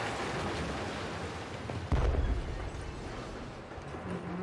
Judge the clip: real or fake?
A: real